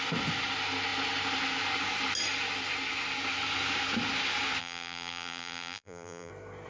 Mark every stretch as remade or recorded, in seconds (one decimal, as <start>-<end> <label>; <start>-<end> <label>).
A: 0.0-4.6 recorded; 4.6-6.3 remade; 6.3-6.7 recorded